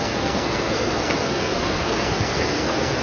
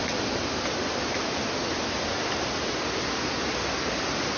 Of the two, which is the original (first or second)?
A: second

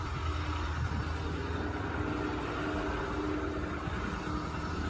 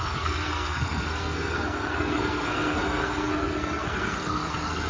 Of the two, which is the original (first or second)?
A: first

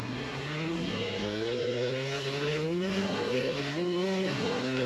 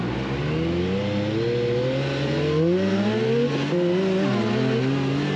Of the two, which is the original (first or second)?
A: second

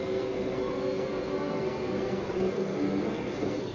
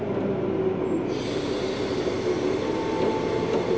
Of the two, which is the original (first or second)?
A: second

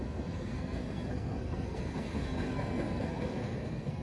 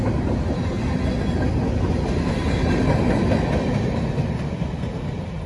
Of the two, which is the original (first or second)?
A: second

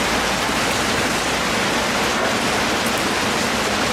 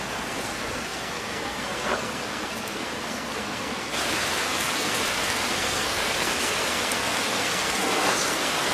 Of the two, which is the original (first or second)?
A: first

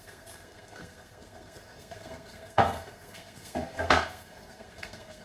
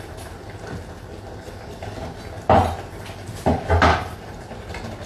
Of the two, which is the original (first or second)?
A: second